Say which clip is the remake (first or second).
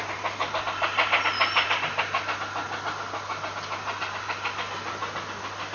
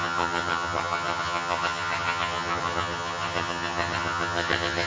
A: second